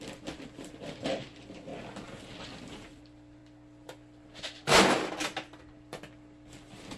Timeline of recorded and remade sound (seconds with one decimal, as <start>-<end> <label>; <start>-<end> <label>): 0.0-1.7 remade; 1.7-2.2 recorded; 2.2-3.4 remade; 3.4-7.0 recorded